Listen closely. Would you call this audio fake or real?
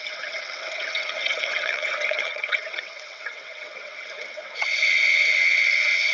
fake